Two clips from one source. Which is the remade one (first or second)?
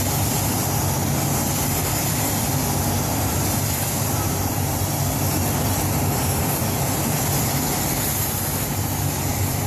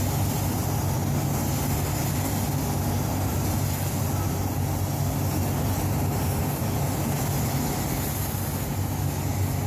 first